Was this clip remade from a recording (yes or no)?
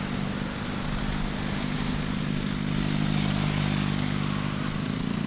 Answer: no